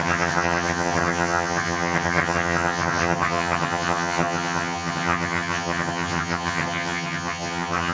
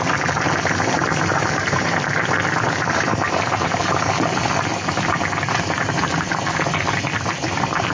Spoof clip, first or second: first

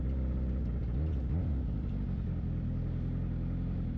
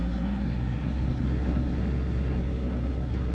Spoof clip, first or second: second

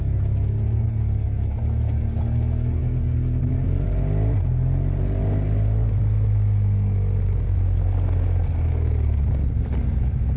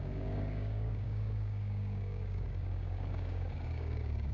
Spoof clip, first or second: second